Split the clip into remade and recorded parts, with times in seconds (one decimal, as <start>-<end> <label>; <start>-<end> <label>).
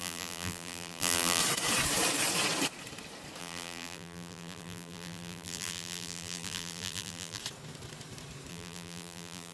0.0-1.4 remade; 1.4-3.4 recorded; 3.4-7.4 remade; 7.4-8.5 recorded; 8.5-9.5 remade